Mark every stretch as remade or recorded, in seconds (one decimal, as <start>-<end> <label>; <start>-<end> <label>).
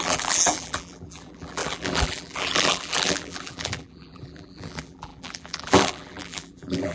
0.0-6.9 remade